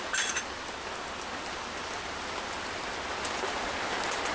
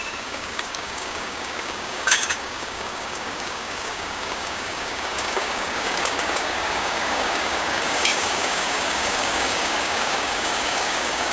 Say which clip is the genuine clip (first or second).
first